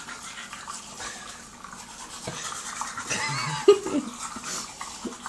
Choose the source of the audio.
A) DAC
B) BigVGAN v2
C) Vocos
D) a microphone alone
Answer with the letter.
D